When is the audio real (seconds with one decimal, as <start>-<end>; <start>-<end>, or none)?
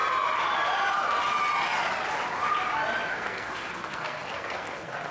0.0-3.1